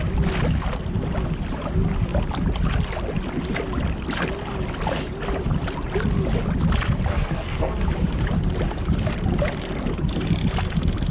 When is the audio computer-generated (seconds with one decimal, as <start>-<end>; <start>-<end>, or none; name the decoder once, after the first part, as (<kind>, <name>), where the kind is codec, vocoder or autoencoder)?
7.1-7.8 (codec, SNAC)